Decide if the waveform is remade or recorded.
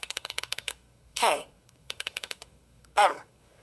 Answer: remade